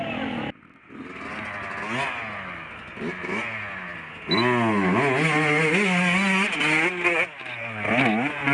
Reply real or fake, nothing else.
real